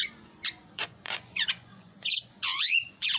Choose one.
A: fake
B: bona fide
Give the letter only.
A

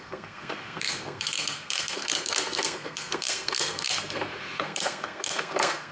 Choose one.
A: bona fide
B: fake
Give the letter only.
B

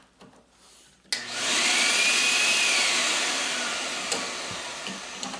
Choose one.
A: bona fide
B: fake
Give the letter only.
A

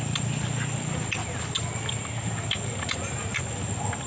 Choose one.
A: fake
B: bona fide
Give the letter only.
B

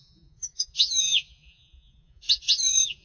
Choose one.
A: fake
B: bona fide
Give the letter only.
A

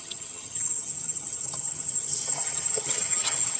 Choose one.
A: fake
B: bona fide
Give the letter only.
A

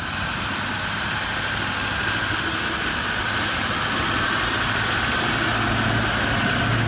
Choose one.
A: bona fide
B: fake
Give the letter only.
A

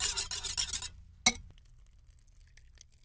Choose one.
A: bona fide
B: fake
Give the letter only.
A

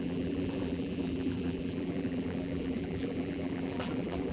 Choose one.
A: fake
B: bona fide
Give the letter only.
A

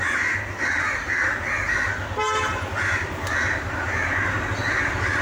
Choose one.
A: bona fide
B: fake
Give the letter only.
A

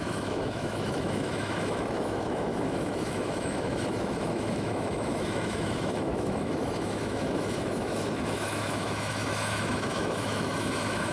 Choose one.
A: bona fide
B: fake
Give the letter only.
B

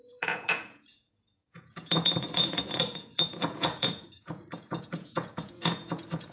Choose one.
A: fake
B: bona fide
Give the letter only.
A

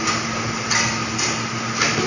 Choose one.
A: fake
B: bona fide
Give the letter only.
B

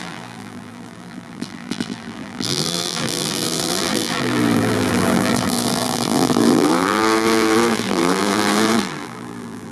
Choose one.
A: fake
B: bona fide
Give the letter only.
A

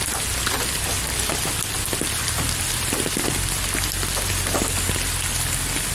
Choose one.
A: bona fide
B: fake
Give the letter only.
A